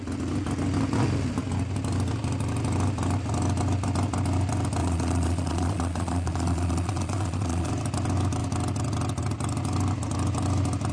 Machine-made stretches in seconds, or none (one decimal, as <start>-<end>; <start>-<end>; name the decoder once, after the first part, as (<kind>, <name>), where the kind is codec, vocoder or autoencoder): 4.8-7.7 (vocoder, Vocos)